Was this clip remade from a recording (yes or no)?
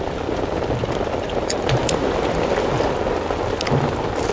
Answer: no